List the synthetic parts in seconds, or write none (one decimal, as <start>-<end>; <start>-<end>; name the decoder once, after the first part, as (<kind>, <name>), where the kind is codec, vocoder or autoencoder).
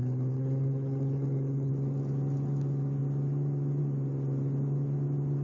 0.0-1.7 (codec, HILCodec)